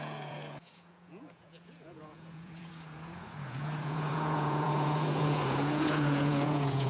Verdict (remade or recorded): remade